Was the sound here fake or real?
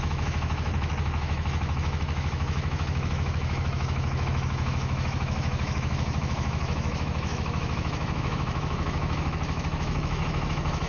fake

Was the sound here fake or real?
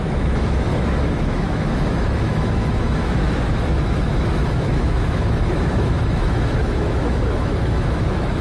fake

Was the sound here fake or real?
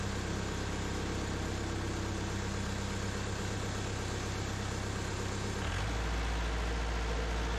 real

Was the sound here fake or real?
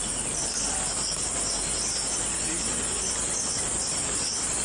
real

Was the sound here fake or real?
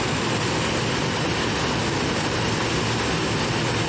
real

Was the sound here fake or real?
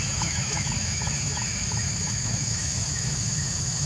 fake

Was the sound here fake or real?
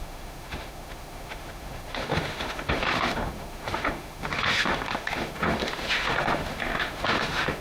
fake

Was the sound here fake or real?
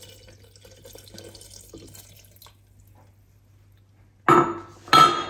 real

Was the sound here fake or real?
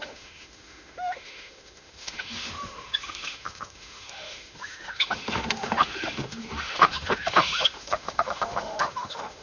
fake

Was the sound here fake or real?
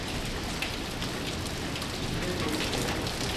real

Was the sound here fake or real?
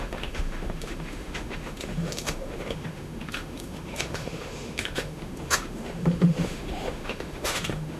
fake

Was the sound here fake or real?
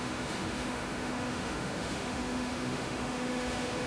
fake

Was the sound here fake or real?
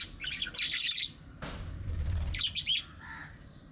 real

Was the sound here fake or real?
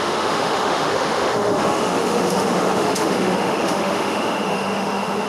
fake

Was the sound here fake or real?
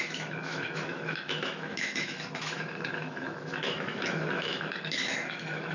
fake